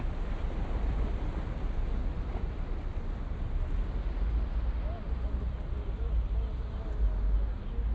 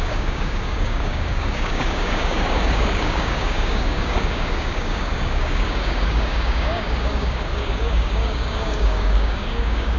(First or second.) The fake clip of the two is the second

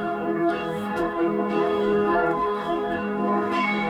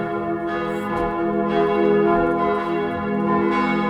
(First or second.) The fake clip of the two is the first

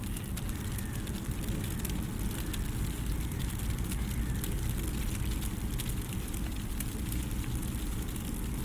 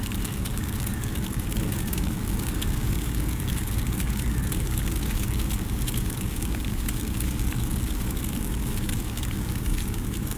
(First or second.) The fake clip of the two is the second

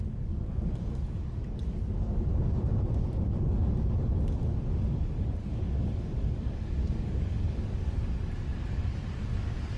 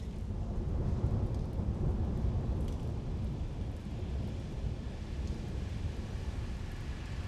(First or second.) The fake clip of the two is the first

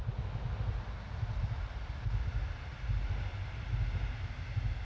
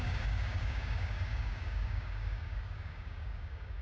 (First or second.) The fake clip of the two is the second